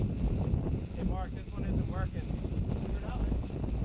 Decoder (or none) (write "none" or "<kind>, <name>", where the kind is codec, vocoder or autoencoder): none